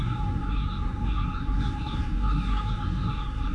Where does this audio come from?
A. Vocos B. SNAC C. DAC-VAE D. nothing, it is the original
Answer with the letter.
B